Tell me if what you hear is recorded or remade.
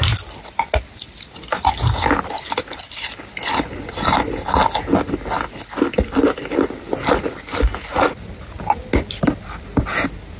recorded